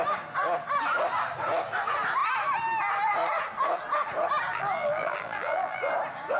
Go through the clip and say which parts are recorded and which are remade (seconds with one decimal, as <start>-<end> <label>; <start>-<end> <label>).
0.0-4.5 recorded; 4.5-5.9 remade; 5.9-6.4 recorded